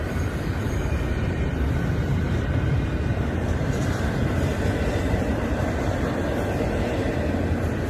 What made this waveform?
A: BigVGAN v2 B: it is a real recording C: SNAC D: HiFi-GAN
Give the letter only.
A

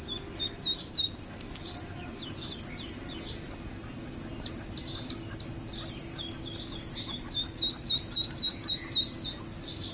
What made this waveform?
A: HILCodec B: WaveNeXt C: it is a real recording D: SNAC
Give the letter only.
C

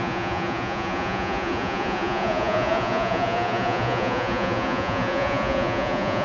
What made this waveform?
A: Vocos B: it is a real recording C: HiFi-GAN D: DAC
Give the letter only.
A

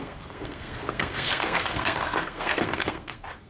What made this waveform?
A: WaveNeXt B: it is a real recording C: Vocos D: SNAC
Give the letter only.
D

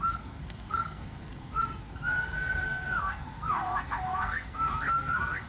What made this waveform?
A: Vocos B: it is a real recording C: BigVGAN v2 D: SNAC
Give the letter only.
D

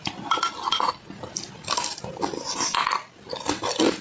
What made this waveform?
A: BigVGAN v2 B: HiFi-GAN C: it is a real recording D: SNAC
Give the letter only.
C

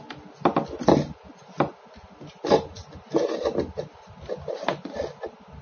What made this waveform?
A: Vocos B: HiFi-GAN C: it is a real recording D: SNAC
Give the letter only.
C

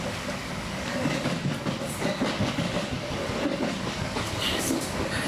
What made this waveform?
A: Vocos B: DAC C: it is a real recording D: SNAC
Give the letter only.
B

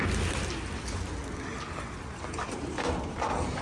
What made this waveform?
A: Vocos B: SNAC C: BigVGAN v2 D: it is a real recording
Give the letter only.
D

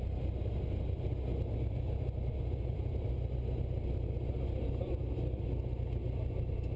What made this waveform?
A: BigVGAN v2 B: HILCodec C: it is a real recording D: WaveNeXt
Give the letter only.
C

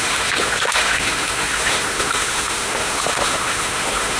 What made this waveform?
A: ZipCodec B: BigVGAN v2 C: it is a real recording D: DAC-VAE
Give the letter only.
D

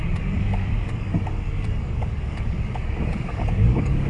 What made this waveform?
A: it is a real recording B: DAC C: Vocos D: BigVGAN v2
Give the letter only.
B